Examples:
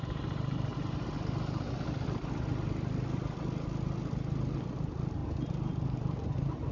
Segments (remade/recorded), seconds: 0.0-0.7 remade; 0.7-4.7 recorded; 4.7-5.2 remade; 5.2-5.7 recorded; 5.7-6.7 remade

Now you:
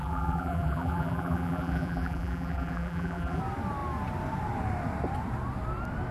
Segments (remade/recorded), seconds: 0.0-3.4 remade; 3.4-6.1 recorded